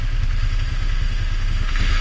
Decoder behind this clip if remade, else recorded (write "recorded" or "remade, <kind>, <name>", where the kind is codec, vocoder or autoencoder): remade, autoencoder, DAC-VAE